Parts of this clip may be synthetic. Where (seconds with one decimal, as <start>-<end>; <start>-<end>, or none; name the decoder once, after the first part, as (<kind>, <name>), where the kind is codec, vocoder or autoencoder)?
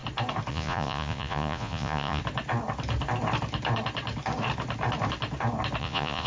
0.5-2.2 (vocoder, Vocos); 5.8-6.3